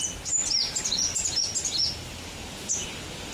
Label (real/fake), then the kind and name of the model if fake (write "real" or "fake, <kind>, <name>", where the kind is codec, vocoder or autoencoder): real